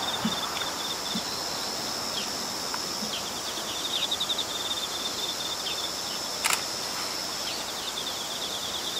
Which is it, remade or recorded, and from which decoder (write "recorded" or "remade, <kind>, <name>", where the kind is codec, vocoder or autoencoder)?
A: recorded